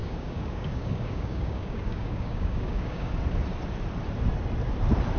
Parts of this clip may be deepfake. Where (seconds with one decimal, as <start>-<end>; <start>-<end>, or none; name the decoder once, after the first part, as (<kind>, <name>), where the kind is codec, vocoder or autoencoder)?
0.0-3.1 (codec, DAC)